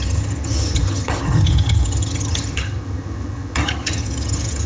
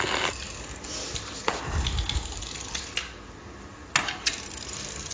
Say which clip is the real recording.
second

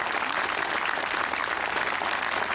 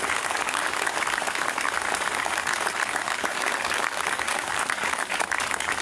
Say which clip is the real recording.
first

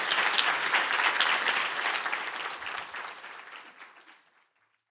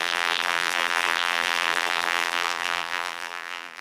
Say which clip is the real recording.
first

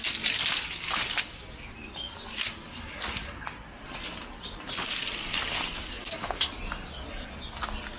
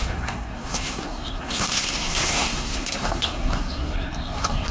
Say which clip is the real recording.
first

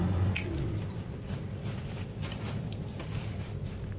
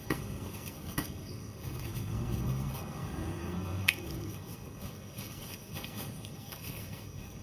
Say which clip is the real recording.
first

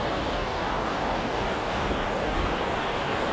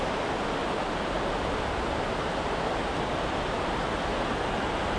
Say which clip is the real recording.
second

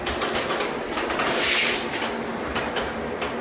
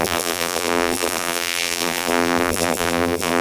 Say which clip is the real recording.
first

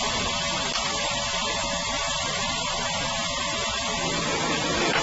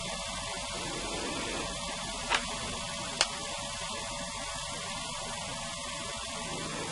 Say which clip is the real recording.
second